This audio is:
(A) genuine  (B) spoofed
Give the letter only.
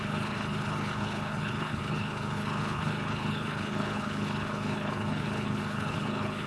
B